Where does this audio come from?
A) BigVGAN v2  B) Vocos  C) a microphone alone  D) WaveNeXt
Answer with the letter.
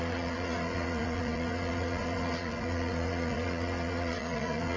B